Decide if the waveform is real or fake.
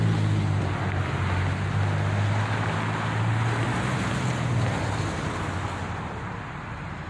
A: real